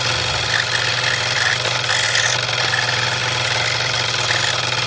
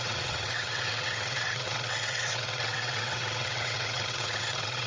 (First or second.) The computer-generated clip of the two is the second